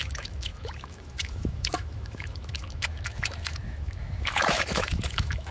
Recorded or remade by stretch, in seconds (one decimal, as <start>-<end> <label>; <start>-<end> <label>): 0.0-5.5 remade